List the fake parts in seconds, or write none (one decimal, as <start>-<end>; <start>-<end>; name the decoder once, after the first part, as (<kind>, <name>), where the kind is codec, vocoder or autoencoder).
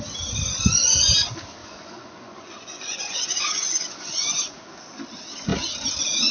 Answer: 1.6-4.6 (vocoder, Vocos)